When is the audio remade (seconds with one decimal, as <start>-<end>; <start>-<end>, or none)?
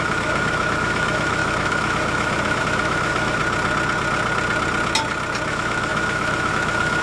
0.0-3.4; 5.5-7.0